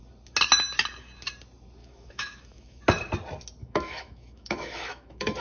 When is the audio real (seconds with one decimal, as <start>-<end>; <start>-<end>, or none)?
0.0-1.8; 2.8-3.6